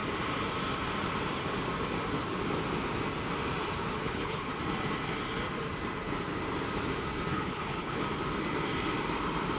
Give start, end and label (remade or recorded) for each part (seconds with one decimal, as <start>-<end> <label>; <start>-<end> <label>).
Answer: 0.0-4.0 recorded; 4.0-4.5 remade; 4.5-7.3 recorded; 7.3-8.0 remade; 8.0-9.6 recorded